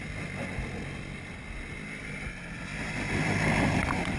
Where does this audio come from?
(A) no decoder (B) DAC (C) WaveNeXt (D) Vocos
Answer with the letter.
A